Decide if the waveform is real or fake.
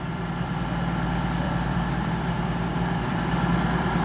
fake